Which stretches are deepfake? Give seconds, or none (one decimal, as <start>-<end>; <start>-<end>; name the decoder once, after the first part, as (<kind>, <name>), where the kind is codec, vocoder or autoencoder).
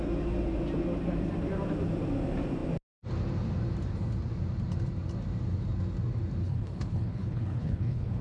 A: 6.4-8.2 (codec, HILCodec)